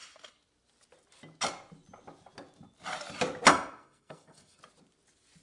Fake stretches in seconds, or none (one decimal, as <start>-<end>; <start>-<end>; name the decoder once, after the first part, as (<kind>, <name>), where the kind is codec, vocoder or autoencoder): 3.5-4.6 (codec, SNAC)